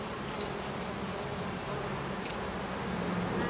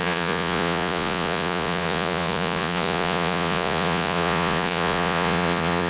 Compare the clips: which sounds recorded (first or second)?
first